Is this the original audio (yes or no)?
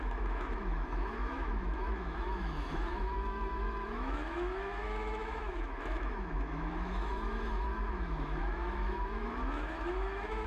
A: no